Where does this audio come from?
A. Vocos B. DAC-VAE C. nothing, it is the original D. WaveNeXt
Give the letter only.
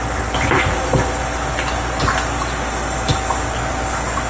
C